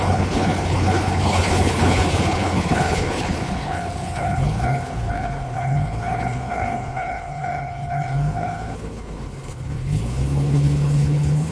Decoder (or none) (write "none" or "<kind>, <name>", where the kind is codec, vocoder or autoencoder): codec, HILCodec